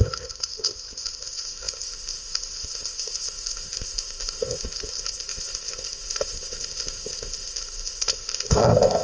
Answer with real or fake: fake